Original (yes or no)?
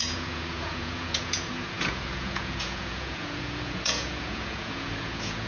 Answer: no